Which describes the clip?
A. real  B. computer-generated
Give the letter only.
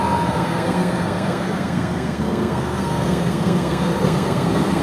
B